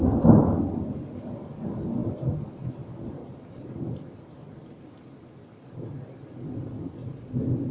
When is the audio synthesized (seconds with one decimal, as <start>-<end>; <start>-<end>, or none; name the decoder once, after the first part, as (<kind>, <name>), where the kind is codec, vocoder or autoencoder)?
3.2-4.9 (vocoder, BigVGAN v2); 7.0-7.7